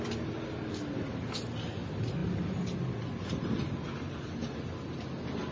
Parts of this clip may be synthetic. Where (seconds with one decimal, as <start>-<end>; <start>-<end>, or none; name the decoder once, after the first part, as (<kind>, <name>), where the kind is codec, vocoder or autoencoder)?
none